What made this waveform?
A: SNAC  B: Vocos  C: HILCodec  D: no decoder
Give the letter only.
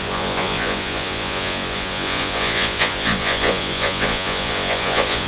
B